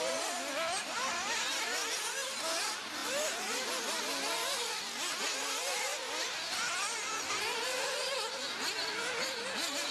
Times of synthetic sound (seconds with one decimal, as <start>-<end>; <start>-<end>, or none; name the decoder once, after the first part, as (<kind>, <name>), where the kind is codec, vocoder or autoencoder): none

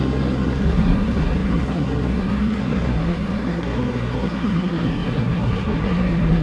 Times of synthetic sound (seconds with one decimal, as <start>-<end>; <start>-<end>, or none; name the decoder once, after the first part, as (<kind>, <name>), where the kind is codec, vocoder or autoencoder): 0.0-6.4 (codec, SNAC)

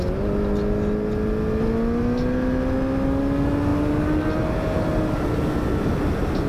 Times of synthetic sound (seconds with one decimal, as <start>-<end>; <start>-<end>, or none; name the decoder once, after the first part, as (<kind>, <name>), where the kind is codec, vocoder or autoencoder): none

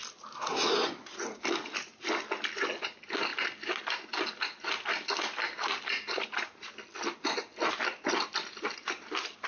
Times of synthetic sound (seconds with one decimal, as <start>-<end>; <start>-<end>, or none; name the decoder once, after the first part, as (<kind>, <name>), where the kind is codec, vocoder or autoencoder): none

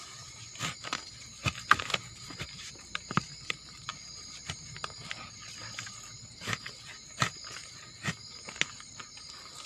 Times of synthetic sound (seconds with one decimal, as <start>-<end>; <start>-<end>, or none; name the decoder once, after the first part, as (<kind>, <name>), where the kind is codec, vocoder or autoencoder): none